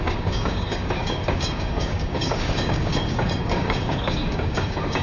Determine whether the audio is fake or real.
fake